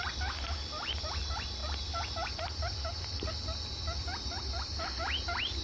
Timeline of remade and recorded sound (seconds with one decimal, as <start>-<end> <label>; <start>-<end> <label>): 0.0-5.6 recorded